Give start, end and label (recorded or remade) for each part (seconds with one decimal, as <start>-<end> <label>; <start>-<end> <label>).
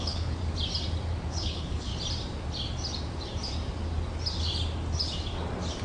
0.0-0.4 remade; 0.4-1.3 recorded; 1.3-1.9 remade; 1.9-5.8 recorded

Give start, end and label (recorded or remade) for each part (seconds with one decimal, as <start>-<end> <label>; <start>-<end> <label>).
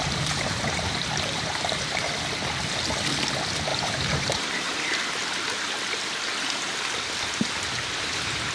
0.0-2.1 remade; 2.1-3.7 recorded; 3.7-4.7 remade; 4.7-8.5 recorded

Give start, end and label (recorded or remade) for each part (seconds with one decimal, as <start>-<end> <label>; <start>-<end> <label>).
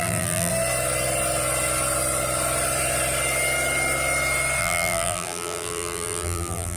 0.0-0.5 remade; 0.5-4.6 recorded; 4.6-6.8 remade